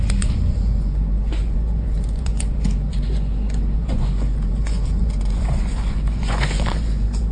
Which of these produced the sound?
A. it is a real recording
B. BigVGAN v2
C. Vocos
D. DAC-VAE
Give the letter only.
C